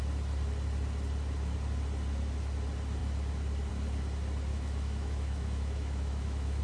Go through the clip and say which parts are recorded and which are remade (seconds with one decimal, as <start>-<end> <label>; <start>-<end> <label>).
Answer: 0.0-4.5 recorded; 4.5-6.6 remade